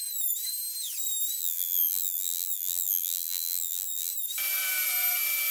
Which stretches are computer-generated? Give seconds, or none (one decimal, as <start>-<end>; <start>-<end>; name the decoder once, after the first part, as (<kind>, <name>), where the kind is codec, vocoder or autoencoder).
1.4-4.1 (vocoder, BigVGAN v2)